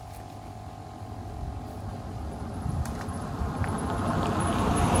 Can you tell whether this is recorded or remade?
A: recorded